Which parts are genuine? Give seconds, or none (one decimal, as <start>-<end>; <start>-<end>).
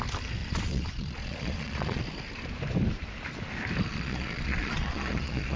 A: 0.0-0.4; 2.0-3.9